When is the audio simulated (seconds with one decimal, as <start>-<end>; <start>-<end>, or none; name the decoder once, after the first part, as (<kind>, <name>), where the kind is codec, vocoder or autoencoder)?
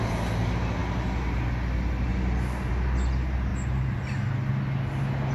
none